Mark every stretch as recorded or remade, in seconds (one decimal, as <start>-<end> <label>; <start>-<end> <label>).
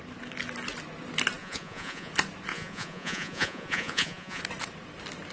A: 0.0-1.4 recorded; 1.4-2.1 remade; 2.1-2.5 recorded; 2.5-4.4 remade; 4.4-5.3 recorded